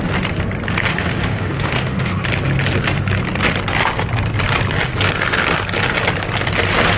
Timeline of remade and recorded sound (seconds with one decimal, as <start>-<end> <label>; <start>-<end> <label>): 0.0-0.9 recorded; 0.9-2.2 remade; 2.2-7.0 recorded